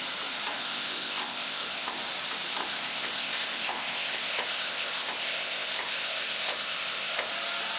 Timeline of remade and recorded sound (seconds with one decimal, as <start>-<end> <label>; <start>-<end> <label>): 0.0-0.6 recorded; 0.6-2.0 remade; 2.0-2.6 recorded; 2.6-7.3 remade; 7.3-7.8 recorded